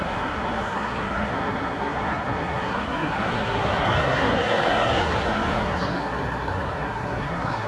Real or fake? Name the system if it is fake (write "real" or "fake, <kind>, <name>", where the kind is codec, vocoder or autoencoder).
fake, codec, SNAC